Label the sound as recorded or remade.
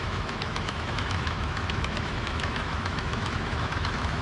remade